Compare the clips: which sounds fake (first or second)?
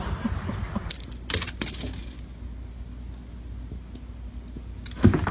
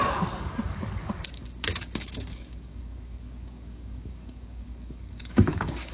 second